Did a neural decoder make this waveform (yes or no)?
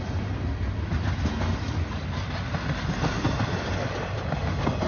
no